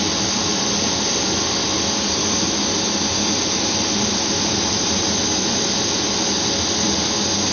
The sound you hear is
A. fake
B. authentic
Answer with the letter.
B